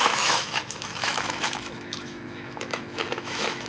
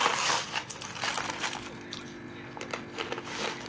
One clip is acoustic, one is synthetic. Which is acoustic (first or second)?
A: second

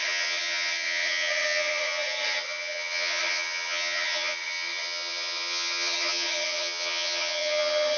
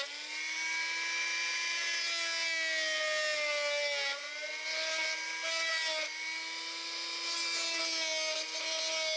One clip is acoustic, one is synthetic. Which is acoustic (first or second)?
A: second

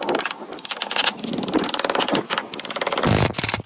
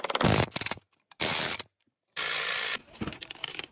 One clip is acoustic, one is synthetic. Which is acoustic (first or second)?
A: first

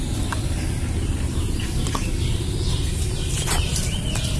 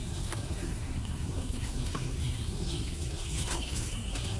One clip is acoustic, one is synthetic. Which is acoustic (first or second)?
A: first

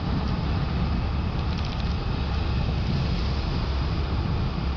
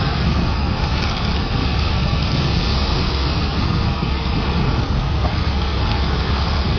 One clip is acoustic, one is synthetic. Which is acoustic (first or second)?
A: first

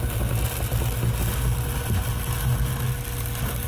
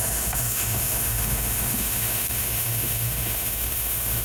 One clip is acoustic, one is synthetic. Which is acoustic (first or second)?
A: first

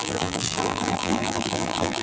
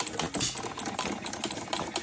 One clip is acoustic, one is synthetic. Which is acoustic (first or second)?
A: second